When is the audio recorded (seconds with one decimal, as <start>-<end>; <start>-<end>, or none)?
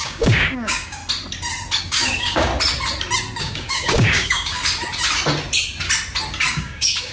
1.0-1.8; 2.5-3.4; 4.6-6.5